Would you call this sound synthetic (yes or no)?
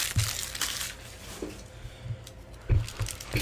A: no